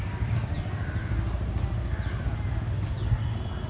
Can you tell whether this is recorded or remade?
recorded